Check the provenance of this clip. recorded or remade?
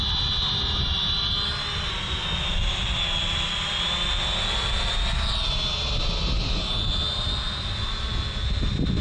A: recorded